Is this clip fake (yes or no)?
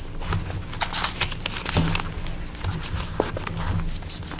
no